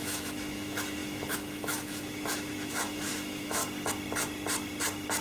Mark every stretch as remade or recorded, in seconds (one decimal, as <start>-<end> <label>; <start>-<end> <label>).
0.0-3.6 remade; 3.6-5.2 recorded